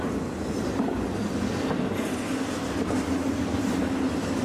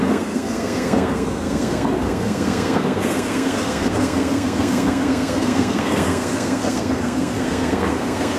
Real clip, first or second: first